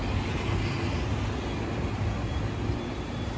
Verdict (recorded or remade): recorded